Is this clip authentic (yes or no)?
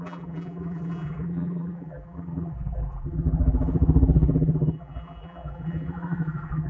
no